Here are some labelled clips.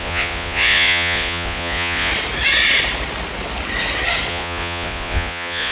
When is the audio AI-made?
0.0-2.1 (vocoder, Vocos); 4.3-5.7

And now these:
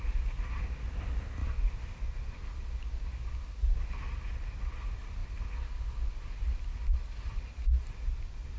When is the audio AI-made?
none

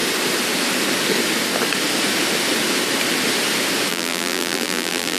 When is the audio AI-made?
3.9-5.2 (vocoder, BigVGAN v2)

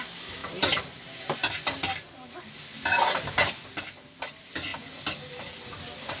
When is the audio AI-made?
none

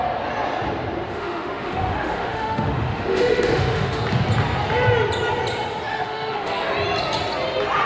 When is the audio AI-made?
1.1-4.0 (autoencoder, DAC-VAE); 5.9-6.7